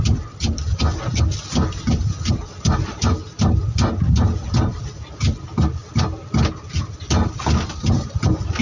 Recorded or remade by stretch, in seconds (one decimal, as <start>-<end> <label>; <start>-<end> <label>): 0.0-8.6 recorded